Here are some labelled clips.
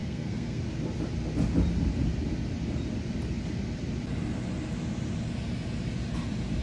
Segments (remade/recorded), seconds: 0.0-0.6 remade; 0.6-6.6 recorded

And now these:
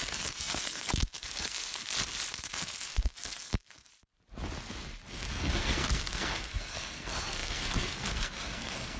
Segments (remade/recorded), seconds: 0.0-1.8 remade; 1.8-2.3 recorded; 2.3-3.9 remade; 3.9-5.1 recorded; 5.1-9.0 remade

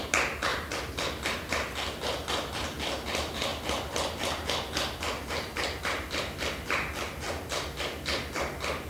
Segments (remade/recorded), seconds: 0.0-8.9 recorded

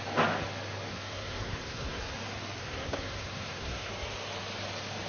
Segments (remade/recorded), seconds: 0.0-0.9 recorded; 0.9-2.0 remade; 2.0-2.6 recorded; 2.6-3.9 remade; 3.9-5.1 recorded

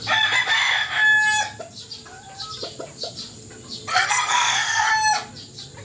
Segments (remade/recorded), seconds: 0.0-3.9 recorded; 3.9-4.9 remade; 4.9-5.8 recorded

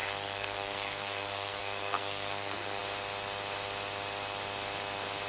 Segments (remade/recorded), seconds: 0.0-2.8 remade; 2.8-5.3 recorded

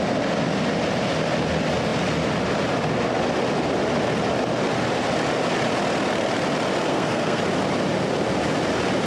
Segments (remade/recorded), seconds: 0.0-6.9 recorded; 6.9-7.4 remade; 7.4-9.1 recorded